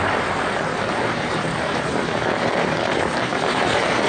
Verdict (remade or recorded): remade